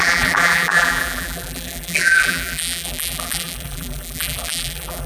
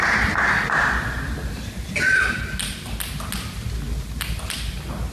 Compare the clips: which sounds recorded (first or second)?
second